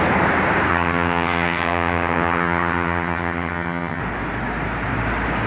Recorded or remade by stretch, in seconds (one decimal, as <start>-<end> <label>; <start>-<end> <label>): 0.0-0.7 recorded; 0.7-4.0 remade; 4.0-5.5 recorded